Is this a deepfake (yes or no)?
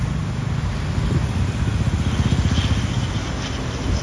no